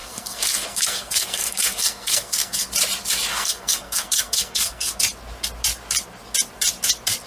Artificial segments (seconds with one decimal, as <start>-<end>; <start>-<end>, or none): 0.0-2.7; 3.3-5.0